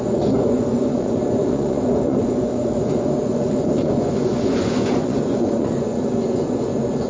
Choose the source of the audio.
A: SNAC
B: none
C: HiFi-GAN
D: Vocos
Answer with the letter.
D